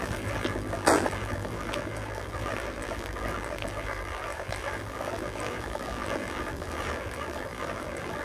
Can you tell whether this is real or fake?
fake